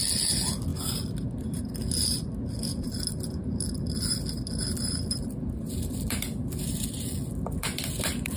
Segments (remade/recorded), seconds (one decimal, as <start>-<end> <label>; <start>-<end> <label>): 0.0-8.4 recorded